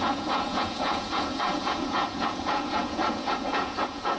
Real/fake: fake